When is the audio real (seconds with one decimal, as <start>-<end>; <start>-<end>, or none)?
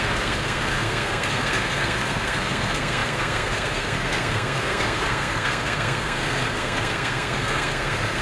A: none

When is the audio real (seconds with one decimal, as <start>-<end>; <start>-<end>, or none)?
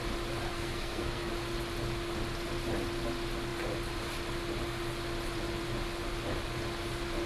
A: 0.0-0.5; 1.3-7.3